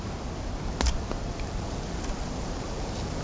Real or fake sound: real